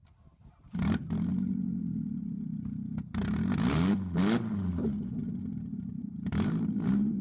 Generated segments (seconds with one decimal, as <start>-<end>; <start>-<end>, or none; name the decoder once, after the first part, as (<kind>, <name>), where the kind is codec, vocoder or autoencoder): 0.0-1.3 (vocoder, BigVGAN v2); 4.5-7.2